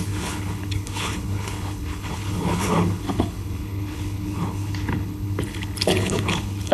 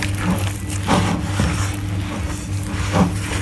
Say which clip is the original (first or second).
second